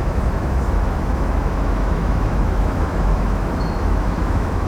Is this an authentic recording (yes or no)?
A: no